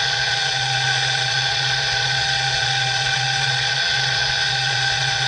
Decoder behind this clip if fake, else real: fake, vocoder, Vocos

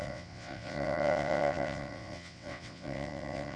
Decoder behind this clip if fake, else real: fake, vocoder, WaveNeXt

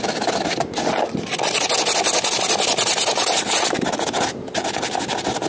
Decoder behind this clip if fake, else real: real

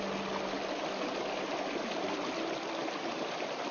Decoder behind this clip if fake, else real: real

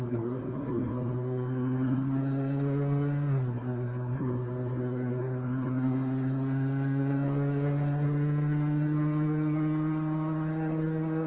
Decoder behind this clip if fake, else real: fake, codec, SNAC